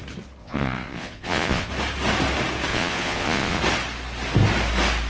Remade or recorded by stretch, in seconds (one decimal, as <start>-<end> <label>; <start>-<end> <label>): 0.0-0.4 recorded; 0.4-1.7 remade; 1.7-2.7 recorded; 2.7-3.6 remade; 3.6-5.1 recorded